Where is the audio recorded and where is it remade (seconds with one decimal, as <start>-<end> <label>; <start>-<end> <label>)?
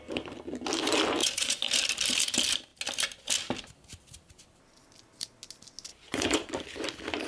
0.0-1.2 recorded; 1.2-1.7 remade; 1.7-5.9 recorded; 5.9-6.5 remade; 6.5-7.3 recorded